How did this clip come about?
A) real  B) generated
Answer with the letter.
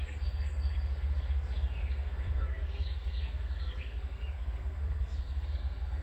B